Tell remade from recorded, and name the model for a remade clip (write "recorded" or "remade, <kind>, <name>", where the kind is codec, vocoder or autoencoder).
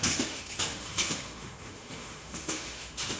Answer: remade, autoencoder, DAC-VAE